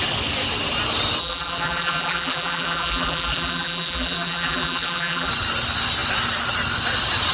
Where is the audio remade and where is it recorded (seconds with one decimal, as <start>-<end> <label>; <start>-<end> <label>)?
0.0-1.2 recorded; 1.2-5.3 remade; 5.3-7.3 recorded